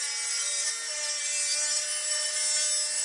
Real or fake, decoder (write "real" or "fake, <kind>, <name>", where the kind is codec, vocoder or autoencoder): real